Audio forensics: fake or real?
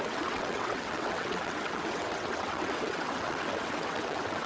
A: fake